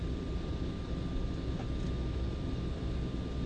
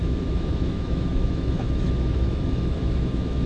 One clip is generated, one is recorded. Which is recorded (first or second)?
first